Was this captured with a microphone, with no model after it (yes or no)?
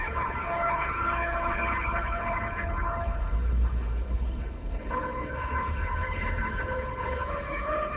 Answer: no